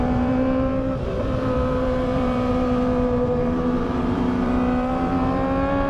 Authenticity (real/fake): fake